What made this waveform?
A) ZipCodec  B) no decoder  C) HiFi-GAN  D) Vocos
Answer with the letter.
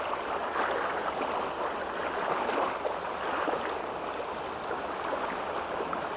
B